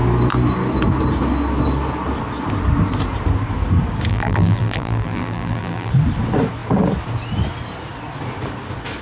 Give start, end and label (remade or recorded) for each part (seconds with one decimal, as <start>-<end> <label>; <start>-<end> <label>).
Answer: 0.0-4.1 recorded; 4.1-5.9 remade; 5.9-9.0 recorded